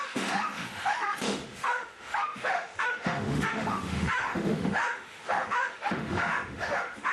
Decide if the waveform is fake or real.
fake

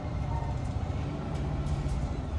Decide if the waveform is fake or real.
fake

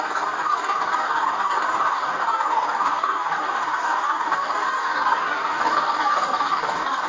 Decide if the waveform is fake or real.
fake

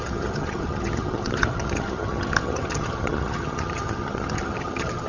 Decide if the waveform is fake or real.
fake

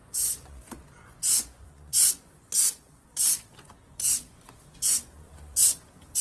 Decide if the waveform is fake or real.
fake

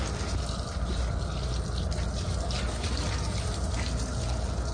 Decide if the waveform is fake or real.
real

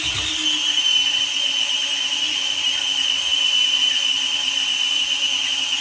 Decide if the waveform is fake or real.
real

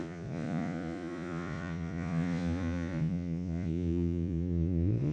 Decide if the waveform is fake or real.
fake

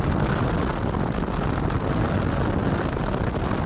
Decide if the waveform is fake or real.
real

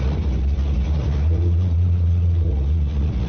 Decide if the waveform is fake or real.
fake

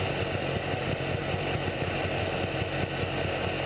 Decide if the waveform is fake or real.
real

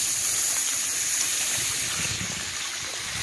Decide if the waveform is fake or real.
real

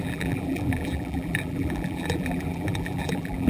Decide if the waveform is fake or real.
fake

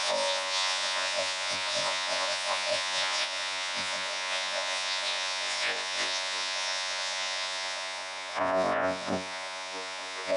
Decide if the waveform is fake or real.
fake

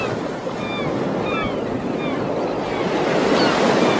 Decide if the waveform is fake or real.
real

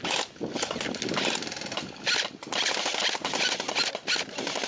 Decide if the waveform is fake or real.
real